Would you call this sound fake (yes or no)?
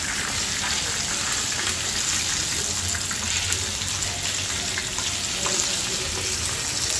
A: no